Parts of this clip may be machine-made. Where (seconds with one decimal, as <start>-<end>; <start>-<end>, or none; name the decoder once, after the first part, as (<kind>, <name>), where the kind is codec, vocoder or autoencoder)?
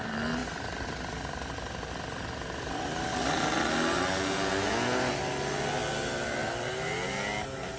none